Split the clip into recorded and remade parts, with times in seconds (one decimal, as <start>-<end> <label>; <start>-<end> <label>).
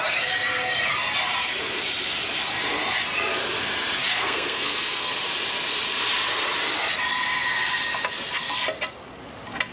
0.0-4.1 recorded; 4.1-5.2 remade; 5.2-9.7 recorded